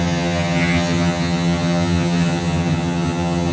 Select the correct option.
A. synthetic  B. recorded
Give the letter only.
A